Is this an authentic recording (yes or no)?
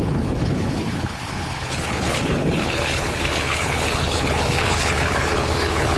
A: no